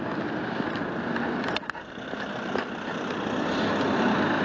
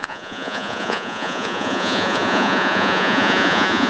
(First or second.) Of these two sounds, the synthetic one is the second